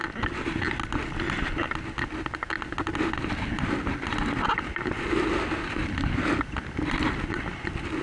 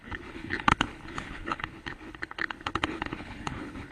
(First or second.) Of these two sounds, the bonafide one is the first